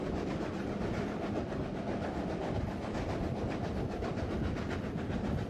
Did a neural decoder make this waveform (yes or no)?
no